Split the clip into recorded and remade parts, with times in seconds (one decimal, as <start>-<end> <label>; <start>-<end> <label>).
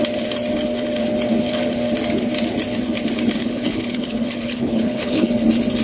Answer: 0.0-3.4 recorded; 3.4-5.3 remade; 5.3-5.8 recorded